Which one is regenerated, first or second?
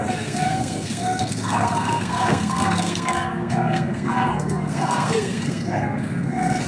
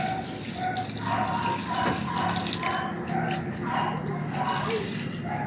first